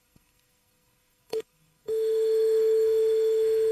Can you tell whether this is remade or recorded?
remade